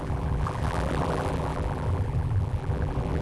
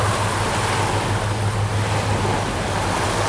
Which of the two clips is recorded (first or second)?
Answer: second